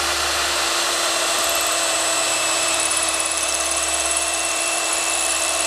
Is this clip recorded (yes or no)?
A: no